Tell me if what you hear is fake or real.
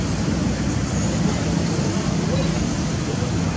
real